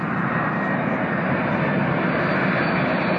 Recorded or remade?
recorded